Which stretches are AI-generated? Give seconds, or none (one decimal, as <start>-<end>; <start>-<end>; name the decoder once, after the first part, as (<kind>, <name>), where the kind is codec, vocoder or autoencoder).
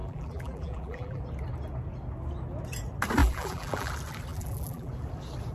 0.0-1.2 (vocoder, BigVGAN v2); 3.2-3.9; 4.3-4.9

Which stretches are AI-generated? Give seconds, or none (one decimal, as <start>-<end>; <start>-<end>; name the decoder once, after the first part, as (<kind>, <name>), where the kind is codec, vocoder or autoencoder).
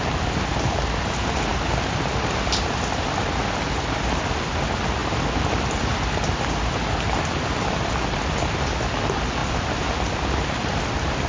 none